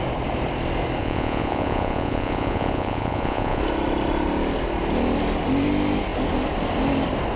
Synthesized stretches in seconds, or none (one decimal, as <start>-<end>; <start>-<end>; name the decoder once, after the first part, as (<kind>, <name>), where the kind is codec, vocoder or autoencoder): 1.0-3.6 (vocoder, Vocos)

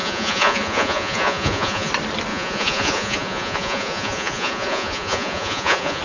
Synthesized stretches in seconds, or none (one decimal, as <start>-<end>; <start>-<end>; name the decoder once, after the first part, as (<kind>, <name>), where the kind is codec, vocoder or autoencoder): 0.0-1.9 (vocoder, Vocos); 2.3-6.0

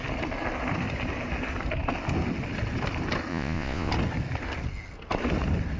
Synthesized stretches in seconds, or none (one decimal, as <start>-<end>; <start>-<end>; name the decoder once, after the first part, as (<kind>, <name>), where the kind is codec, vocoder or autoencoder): 3.3-3.9 (vocoder, Vocos)

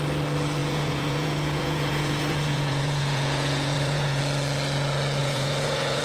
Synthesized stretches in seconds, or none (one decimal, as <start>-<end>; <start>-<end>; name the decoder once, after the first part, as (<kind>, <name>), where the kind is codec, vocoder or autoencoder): 0.6-4.2 (vocoder, Vocos); 5.2-6.0

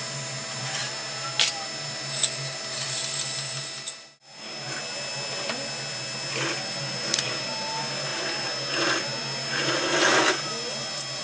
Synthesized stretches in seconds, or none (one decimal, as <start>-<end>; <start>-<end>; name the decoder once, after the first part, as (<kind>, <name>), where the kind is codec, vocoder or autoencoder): none

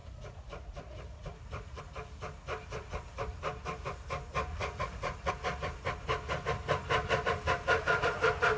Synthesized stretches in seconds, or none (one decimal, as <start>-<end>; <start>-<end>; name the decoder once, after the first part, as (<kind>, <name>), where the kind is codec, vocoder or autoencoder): 0.0-1.8 (vocoder, Vocos); 4.5-5.3